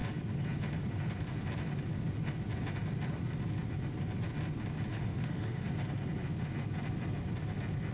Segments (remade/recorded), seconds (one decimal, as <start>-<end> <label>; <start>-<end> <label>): 0.0-4.9 recorded; 4.9-5.7 remade; 5.7-7.9 recorded